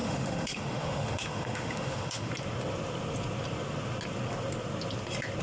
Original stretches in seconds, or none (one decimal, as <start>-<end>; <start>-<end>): 2.3-5.4